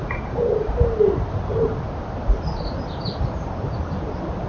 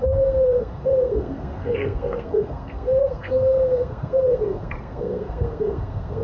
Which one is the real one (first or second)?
first